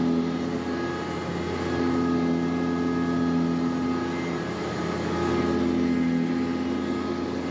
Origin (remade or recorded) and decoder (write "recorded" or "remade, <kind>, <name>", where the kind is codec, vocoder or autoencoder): recorded